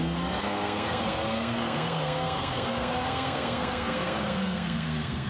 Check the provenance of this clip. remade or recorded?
remade